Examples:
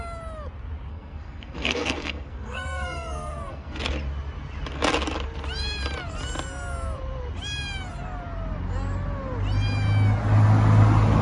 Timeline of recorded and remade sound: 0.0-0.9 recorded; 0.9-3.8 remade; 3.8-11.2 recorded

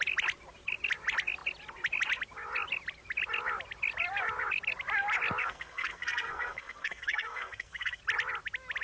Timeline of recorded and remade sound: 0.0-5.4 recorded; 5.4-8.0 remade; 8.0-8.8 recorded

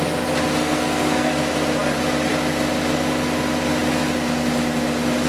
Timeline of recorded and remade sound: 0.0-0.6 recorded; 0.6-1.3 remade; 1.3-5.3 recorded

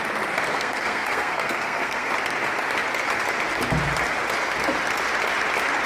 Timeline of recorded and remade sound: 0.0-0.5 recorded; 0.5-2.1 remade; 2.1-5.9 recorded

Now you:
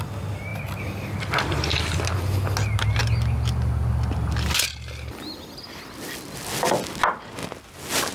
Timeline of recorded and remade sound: 0.0-8.1 recorded

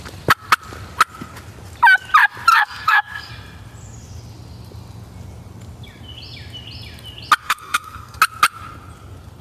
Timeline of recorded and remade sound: 0.0-2.5 recorded; 2.5-3.3 remade; 3.3-7.4 recorded; 7.4-8.2 remade; 8.2-9.4 recorded

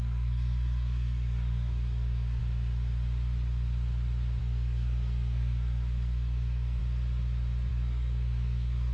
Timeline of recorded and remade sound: 0.0-2.4 remade; 2.4-4.4 recorded; 4.4-6.8 remade; 6.8-7.7 recorded; 7.7-8.9 remade

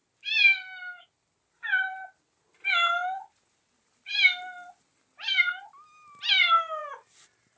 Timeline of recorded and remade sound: 0.0-7.6 recorded